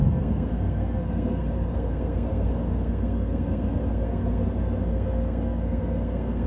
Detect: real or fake fake